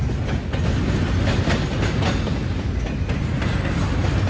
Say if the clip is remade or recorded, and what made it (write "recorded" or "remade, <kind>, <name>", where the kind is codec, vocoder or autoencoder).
recorded